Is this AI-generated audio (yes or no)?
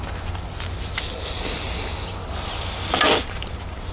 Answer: no